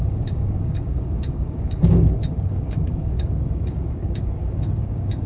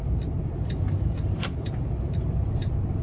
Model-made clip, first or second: first